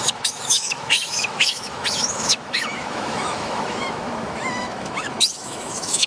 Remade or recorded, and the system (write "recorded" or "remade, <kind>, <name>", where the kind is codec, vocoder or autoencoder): remade, autoencoder, DAC-VAE